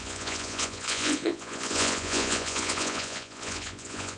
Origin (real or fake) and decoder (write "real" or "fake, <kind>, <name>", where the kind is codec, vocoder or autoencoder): fake, vocoder, Vocos